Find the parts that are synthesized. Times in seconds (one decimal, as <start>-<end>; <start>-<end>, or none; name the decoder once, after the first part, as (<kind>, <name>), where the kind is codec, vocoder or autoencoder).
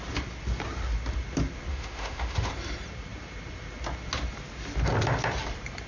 1.7-2.5 (autoencoder, DAC-VAE)